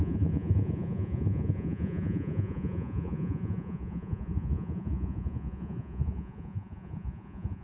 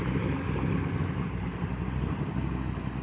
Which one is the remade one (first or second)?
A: first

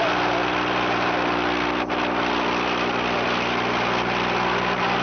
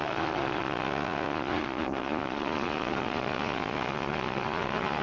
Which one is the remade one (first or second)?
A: second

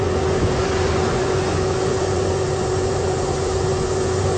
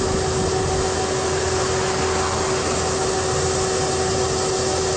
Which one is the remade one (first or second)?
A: first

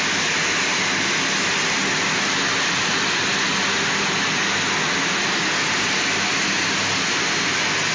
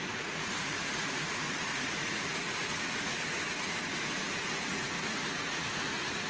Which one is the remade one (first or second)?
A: second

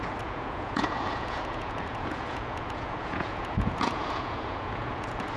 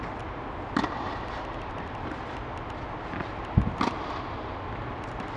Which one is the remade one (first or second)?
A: first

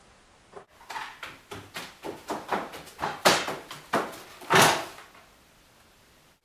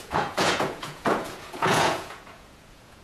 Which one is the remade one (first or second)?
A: second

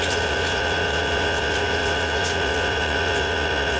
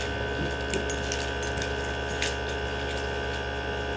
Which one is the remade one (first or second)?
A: first